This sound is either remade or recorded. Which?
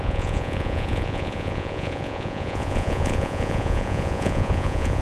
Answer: remade